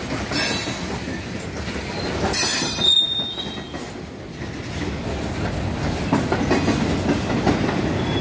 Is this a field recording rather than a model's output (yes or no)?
yes